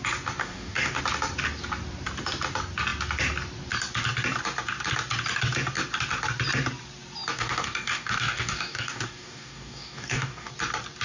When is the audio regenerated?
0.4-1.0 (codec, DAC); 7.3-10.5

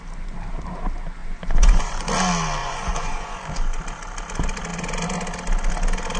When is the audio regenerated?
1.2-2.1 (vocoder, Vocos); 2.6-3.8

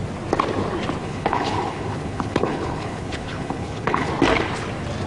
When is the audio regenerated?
1.0-4.1 (codec, HILCodec)